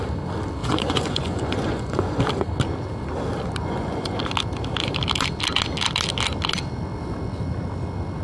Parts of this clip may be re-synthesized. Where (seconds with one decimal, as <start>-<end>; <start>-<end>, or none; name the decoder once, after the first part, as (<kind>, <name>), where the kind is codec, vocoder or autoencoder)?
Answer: 0.6-2.2 (vocoder, Vocos); 3.6-4.2